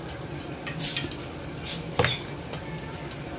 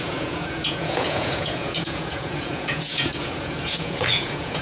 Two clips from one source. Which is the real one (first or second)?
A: first